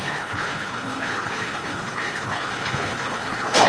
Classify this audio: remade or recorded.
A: remade